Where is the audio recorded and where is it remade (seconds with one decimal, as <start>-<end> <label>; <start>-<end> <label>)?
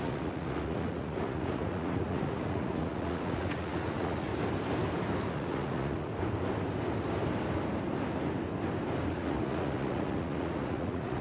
0.0-4.3 remade; 4.3-5.3 recorded; 5.3-6.1 remade; 6.1-9.1 recorded; 9.1-11.2 remade